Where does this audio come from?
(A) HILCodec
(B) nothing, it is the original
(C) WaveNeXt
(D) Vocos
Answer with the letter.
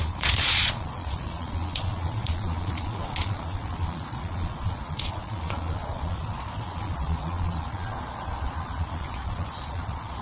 D